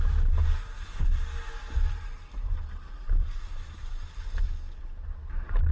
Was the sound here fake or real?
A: real